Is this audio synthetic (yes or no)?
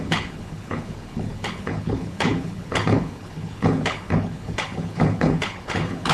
yes